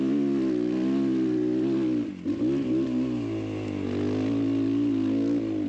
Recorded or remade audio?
recorded